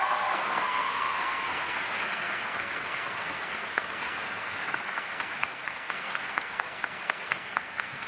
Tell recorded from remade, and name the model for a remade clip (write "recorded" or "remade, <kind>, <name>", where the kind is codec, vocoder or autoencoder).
remade, codec, SNAC